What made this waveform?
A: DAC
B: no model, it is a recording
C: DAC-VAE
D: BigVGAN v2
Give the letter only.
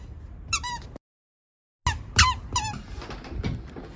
B